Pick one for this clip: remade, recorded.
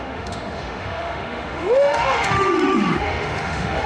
remade